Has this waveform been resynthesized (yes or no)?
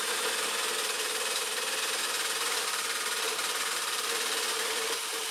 yes